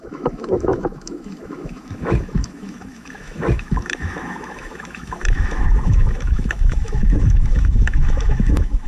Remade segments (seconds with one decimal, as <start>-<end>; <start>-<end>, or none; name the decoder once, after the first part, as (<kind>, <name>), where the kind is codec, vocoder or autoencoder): 0.0-8.9 (autoencoder, DAC-VAE)